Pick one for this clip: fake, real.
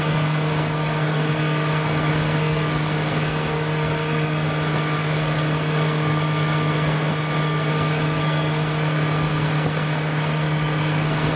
fake